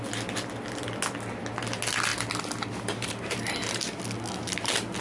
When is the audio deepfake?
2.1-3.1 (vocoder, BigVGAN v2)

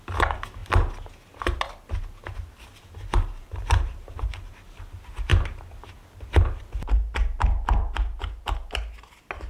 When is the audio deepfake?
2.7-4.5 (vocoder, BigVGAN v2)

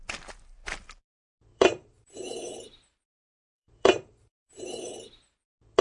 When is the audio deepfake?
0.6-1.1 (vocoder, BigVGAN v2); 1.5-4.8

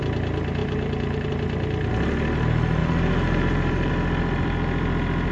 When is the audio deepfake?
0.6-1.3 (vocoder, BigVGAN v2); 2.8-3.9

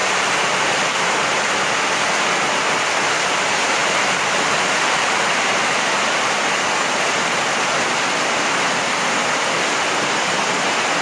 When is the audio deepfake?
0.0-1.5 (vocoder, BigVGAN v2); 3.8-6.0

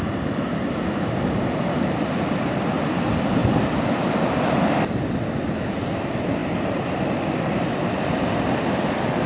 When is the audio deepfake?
0.0-3.4 (vocoder, BigVGAN v2); 4.1-9.3

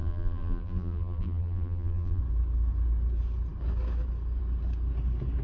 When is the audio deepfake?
0.0-2.2 (vocoder, BigVGAN v2)

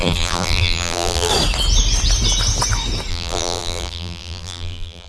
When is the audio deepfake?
0.0-1.3 (vocoder, BigVGAN v2); 3.1-5.1